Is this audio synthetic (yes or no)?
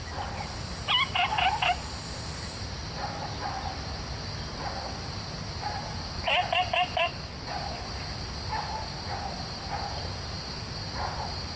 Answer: no